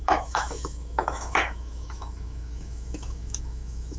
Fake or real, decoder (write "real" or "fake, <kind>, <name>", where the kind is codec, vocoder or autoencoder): fake, autoencoder, DAC-VAE